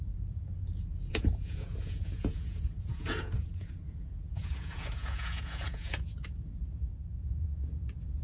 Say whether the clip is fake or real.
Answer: fake